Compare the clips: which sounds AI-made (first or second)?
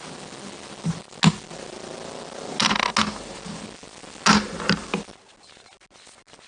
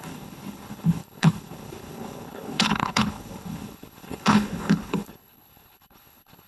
second